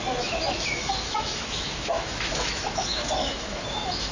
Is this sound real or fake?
fake